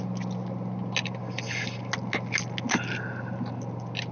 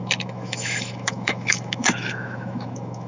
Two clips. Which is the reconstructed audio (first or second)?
second